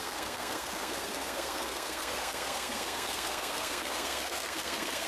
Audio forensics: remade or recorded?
remade